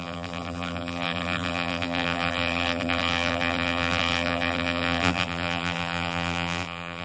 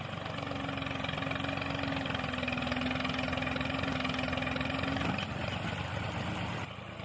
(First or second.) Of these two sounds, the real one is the second